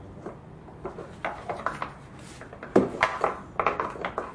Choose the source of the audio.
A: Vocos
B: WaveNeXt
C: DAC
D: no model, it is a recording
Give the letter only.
D